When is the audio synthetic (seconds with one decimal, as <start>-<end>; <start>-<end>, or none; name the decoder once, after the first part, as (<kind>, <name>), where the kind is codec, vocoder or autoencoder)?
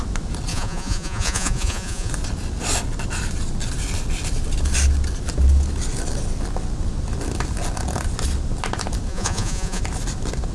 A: 0.5-2.1 (vocoder, Vocos); 9.1-9.8